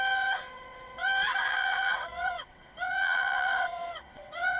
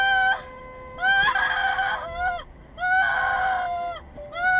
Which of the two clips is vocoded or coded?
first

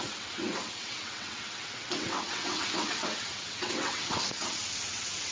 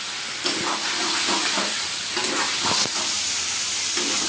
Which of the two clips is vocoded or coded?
first